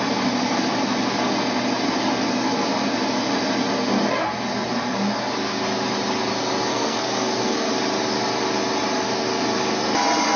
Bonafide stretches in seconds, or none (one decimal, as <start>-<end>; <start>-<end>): 0.0-6.7; 7.7-10.4